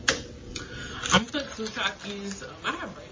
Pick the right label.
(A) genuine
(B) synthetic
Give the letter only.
A